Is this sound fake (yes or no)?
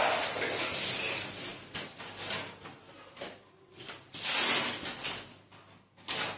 no